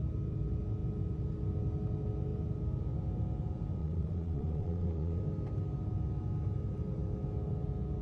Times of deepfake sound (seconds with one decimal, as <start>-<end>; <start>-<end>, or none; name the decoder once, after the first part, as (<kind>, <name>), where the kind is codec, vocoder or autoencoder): 3.8-5.2 (vocoder, Vocos)